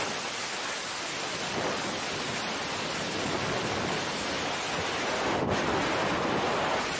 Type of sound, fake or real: real